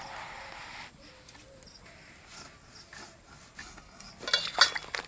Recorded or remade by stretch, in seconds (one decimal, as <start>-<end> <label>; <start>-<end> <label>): 0.0-3.6 recorded; 3.6-4.1 remade; 4.1-5.1 recorded